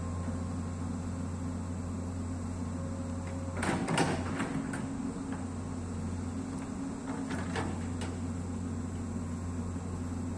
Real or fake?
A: real